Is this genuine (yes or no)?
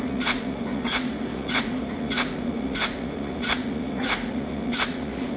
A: no